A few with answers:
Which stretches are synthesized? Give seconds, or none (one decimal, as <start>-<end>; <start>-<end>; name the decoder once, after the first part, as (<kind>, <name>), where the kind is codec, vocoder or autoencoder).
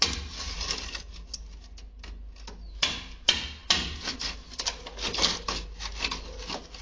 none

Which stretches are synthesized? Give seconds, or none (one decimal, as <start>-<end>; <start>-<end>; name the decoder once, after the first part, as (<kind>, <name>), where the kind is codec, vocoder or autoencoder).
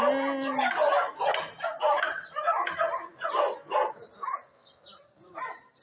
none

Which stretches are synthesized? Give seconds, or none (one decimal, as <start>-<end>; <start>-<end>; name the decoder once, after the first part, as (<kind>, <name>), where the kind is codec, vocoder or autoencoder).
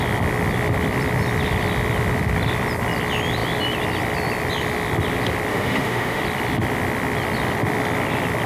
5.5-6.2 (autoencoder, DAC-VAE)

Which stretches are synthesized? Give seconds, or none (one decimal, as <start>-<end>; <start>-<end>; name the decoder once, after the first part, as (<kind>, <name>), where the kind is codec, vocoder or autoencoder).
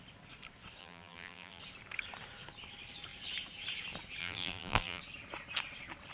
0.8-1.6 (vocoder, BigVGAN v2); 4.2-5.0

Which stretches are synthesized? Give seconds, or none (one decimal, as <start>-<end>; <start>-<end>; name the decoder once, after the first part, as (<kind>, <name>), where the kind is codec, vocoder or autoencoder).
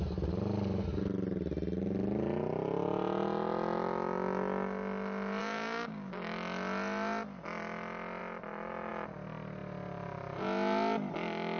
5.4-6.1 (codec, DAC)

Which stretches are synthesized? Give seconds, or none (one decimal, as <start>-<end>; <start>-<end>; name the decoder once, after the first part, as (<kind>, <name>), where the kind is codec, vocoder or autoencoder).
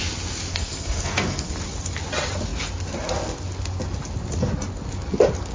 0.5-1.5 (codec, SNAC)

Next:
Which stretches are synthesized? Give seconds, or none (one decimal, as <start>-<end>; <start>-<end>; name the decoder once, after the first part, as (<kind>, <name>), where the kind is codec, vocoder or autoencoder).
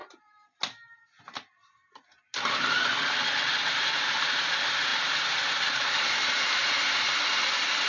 3.6-7.1 (vocoder, BigVGAN v2)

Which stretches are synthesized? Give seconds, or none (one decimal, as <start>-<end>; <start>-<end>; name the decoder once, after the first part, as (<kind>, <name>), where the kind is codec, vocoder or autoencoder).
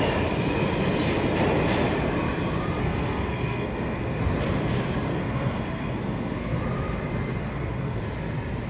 2.8-4.2 (codec, SNAC); 5.1-6.6; 7.4-8.0